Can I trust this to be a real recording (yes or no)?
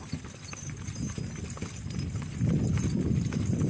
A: yes